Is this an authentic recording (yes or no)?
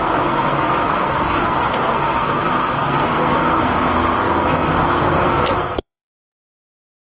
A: no